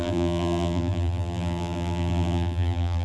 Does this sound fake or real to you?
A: fake